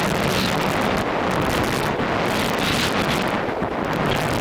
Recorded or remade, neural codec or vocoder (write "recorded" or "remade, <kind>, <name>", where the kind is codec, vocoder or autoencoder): recorded